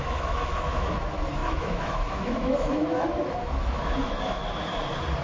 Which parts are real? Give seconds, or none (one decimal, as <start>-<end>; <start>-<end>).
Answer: 4.4-5.2